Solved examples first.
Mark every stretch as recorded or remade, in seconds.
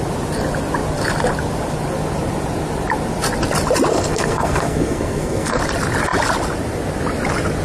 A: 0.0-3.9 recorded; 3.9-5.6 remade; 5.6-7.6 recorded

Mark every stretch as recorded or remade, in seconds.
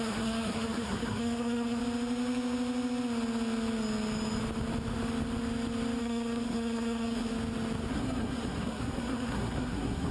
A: 0.0-1.8 remade; 1.8-6.0 recorded; 6.0-7.3 remade; 7.3-7.9 recorded; 7.9-10.1 remade